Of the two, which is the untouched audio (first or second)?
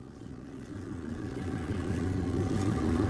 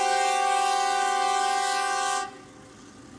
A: second